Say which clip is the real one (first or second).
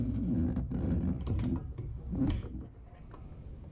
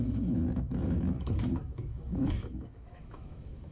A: first